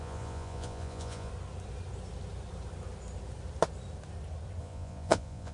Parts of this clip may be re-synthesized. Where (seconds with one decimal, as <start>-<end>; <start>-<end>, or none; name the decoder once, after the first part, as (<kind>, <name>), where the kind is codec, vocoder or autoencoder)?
0.0-1.3 (vocoder, Vocos); 4.6-5.5